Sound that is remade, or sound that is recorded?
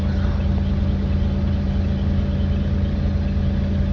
recorded